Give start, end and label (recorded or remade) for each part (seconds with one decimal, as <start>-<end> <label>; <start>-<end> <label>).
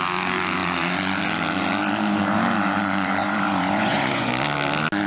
0.0-3.2 recorded; 3.2-4.3 remade; 4.3-5.1 recorded